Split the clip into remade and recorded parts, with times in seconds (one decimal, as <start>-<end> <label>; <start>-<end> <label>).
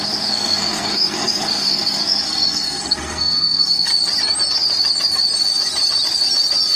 0.0-3.9 remade; 3.9-6.8 recorded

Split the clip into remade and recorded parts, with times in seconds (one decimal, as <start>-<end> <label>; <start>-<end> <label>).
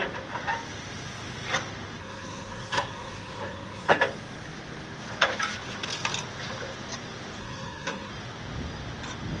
0.0-2.0 recorded; 2.0-4.0 remade; 4.0-7.4 recorded; 7.4-8.1 remade; 8.1-9.4 recorded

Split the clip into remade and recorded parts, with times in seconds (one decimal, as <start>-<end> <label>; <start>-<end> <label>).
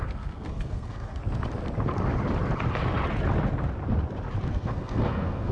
0.0-1.2 remade; 1.2-4.5 recorded; 4.5-5.5 remade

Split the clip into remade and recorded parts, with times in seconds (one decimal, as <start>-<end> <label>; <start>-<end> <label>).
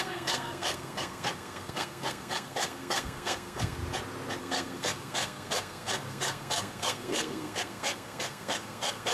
0.0-3.8 remade; 3.8-4.4 recorded; 4.4-9.1 remade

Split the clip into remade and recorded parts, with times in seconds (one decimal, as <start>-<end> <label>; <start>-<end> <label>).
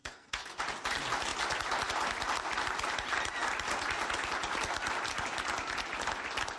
0.0-0.6 remade; 0.6-6.6 recorded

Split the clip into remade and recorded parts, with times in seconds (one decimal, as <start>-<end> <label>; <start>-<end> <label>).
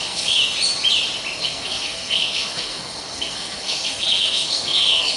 0.0-0.4 remade; 0.4-1.4 recorded; 1.4-5.2 remade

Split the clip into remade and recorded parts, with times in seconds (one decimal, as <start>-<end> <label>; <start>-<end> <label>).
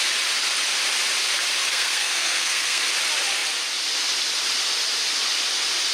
0.0-1.7 recorded; 1.7-2.8 remade; 2.8-5.9 recorded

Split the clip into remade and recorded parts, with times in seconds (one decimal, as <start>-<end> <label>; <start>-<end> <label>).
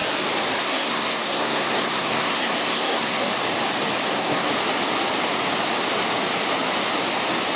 0.0-0.6 recorded; 0.6-3.2 remade; 3.2-4.1 recorded; 4.1-4.5 remade; 4.5-7.6 recorded